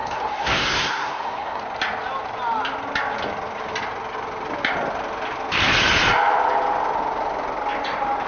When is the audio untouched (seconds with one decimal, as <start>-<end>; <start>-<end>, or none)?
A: 1.6-8.3